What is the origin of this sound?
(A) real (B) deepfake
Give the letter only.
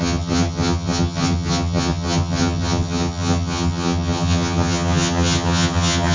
B